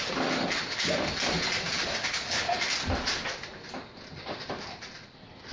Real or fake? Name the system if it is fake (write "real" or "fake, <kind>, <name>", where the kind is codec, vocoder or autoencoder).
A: real